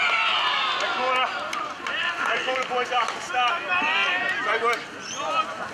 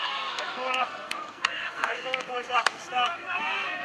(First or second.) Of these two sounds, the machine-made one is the second